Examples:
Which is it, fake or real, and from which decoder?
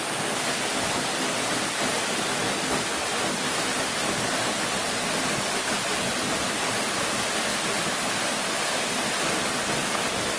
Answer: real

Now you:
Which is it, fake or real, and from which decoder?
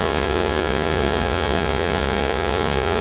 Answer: fake, vocoder, Vocos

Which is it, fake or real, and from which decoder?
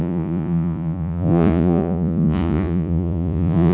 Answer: fake, vocoder, Vocos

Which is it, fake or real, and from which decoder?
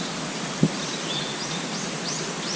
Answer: real